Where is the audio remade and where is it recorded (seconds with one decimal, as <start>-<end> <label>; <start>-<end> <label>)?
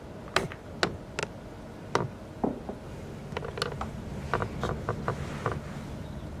0.0-6.4 recorded